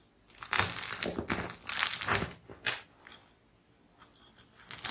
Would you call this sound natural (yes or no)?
yes